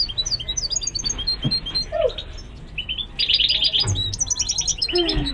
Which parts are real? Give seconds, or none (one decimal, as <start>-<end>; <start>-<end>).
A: 0.0-4.7